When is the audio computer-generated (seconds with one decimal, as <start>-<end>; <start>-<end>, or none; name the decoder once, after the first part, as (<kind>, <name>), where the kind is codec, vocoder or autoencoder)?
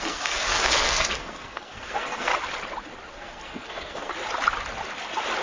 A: 0.0-2.3 (codec, SNAC); 3.1-4.1